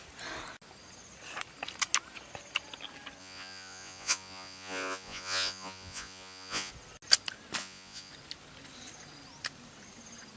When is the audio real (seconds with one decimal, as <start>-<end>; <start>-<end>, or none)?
0.0-3.2; 6.7-7.6; 8.1-10.4